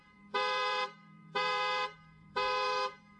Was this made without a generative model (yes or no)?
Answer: no